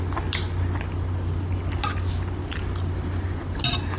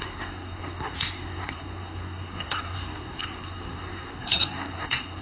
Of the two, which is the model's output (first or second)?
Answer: second